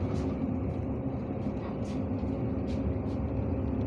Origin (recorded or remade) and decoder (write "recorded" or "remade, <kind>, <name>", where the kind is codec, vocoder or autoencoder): recorded